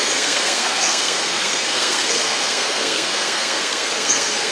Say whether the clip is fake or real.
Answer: fake